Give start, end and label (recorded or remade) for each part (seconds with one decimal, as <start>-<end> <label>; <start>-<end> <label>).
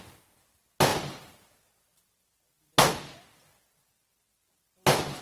0.0-5.2 recorded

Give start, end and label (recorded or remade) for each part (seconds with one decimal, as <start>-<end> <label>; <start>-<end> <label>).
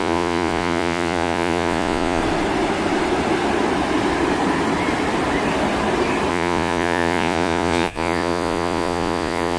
0.0-2.2 remade; 2.2-6.3 recorded; 6.3-9.6 remade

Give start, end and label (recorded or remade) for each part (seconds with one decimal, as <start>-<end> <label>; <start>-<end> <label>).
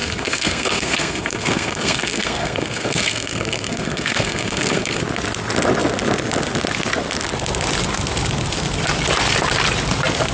0.0-5.0 remade; 5.0-10.3 recorded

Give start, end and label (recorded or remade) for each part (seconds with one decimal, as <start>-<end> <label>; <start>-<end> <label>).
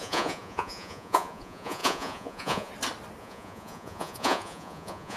0.0-2.7 remade; 2.7-3.2 recorded; 3.2-5.2 remade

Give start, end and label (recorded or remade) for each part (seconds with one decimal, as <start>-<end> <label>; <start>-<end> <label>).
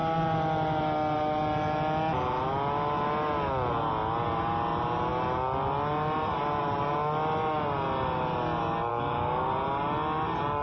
0.0-8.9 recorded; 8.9-9.5 remade; 9.5-10.6 recorded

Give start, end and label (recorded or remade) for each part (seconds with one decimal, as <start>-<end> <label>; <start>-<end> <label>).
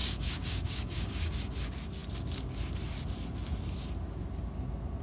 0.0-1.3 remade; 1.3-5.0 recorded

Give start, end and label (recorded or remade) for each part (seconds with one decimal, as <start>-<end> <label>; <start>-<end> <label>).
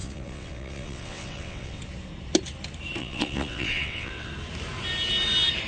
0.0-1.8 remade; 1.8-3.0 recorded; 3.0-4.3 remade; 4.3-5.7 recorded